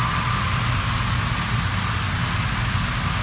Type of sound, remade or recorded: recorded